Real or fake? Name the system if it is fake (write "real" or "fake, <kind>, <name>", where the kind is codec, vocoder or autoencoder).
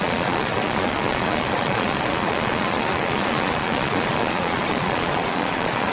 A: fake, vocoder, Vocos